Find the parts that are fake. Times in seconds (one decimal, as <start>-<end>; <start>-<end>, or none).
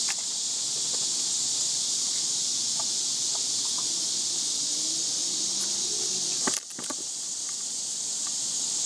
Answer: none